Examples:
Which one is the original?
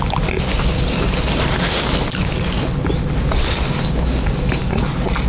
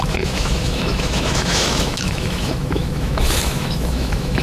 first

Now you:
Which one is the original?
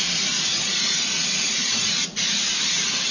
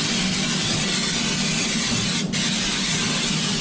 second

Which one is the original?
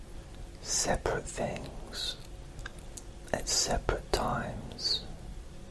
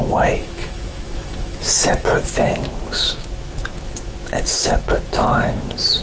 first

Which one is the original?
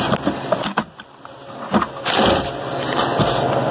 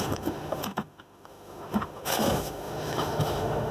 first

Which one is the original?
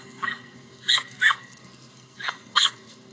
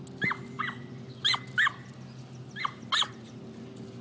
second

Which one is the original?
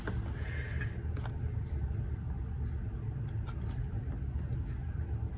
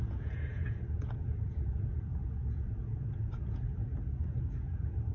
first